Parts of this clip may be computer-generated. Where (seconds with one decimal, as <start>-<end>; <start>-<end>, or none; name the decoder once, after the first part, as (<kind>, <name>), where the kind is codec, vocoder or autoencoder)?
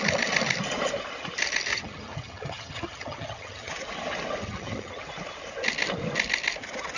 1.7-3.7 (vocoder, HiFi-GAN); 4.4-5.0